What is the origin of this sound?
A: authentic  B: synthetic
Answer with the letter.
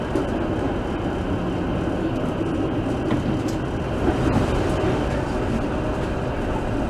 A